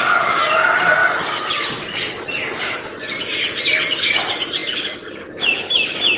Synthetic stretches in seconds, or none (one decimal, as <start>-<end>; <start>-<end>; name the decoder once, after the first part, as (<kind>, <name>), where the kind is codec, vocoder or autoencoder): none